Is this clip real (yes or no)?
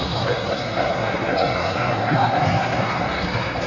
no